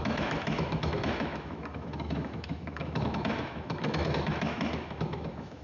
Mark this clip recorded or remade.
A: remade